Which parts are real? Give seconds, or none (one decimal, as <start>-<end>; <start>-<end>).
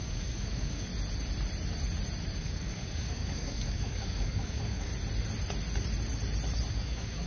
0.9-2.4; 4.9-6.7